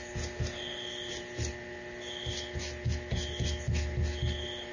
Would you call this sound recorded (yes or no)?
yes